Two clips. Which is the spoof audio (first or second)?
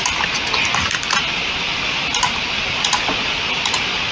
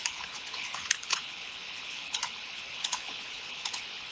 second